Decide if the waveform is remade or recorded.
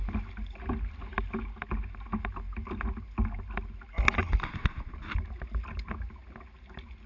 recorded